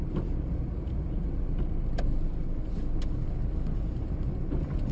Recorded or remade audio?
recorded